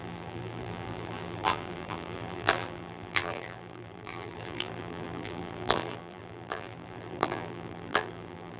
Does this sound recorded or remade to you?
remade